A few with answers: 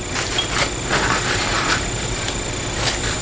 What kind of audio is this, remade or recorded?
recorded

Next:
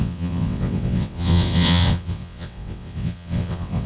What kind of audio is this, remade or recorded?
remade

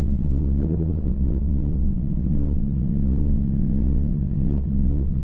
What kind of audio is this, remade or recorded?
remade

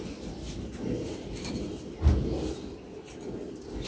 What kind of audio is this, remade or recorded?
recorded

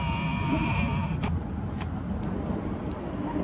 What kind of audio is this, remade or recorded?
recorded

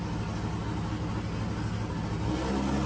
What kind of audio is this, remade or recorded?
recorded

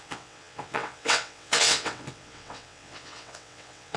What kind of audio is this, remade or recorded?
remade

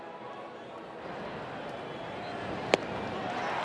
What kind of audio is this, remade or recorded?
recorded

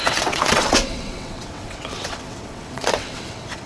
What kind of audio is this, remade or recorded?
remade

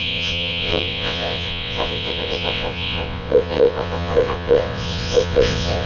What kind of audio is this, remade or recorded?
remade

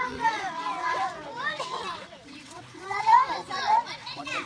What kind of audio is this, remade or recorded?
remade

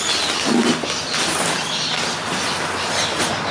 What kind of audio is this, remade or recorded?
recorded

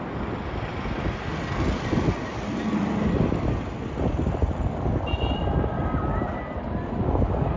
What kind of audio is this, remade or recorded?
recorded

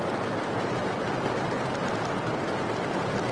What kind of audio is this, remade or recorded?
recorded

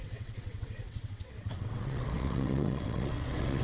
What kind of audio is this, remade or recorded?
remade